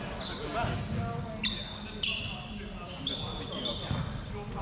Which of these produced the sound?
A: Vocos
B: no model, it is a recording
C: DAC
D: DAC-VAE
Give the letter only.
B